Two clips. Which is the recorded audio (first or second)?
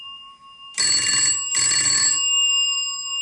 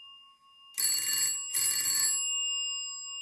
second